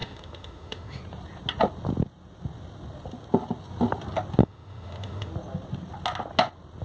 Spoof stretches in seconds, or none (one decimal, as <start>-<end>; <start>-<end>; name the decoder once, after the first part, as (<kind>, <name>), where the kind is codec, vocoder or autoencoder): 0.0-1.0 (autoencoder, DAC-VAE); 4.4-5.3

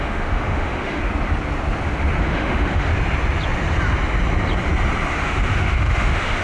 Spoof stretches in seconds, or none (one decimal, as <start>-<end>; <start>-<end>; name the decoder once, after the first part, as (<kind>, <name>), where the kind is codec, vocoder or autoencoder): 0.0-1.0 (autoencoder, DAC-VAE); 2.2-2.9; 5.1-6.4

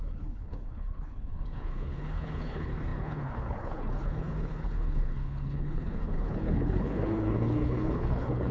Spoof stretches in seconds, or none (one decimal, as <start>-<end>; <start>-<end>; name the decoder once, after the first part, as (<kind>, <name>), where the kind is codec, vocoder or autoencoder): 0.0-8.5 (codec, HILCodec)